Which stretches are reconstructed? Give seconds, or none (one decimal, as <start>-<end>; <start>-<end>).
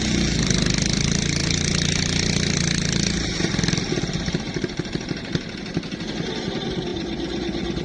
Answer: none